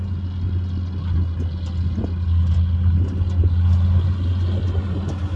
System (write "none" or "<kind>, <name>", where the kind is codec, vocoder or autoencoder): none